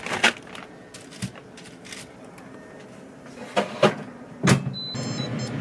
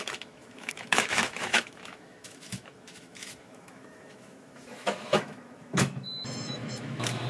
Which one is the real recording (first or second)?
first